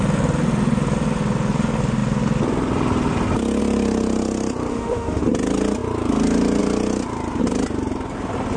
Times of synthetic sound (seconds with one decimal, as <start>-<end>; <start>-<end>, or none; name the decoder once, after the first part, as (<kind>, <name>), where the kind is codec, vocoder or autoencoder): 4.7-5.2 (autoencoder, DAC-VAE)